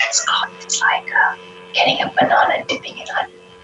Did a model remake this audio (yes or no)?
no